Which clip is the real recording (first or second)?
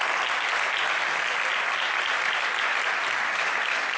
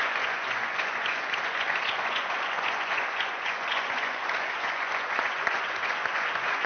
first